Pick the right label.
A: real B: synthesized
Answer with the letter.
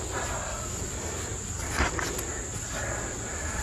A